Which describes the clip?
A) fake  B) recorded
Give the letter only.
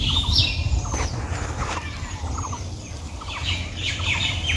A